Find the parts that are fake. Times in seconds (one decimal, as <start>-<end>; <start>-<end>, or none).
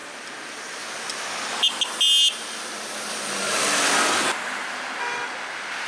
none